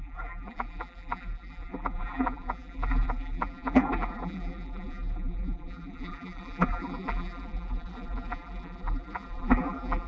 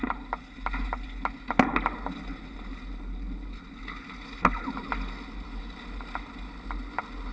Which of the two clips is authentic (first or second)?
second